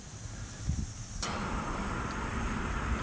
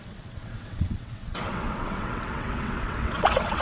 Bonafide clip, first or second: first